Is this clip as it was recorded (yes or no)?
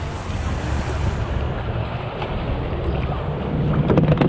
yes